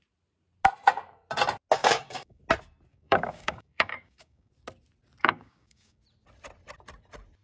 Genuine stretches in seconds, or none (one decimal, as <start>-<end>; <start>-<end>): 0.0-1.8; 2.4-2.9; 4.5-5.2; 6.0-7.4